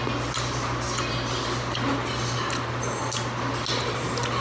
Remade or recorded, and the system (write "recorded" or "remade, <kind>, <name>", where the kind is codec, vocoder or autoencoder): recorded